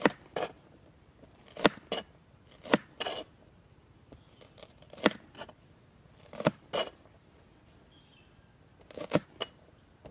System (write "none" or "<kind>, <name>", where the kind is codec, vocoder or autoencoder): none